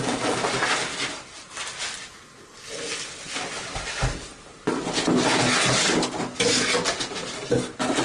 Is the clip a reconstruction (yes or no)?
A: no